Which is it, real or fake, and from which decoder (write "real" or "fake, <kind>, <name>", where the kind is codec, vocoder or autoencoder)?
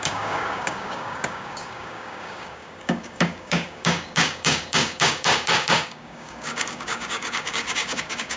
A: fake, codec, DAC